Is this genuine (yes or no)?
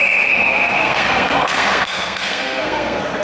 no